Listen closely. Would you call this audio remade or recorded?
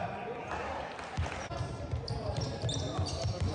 recorded